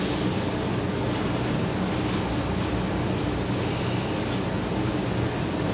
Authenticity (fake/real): real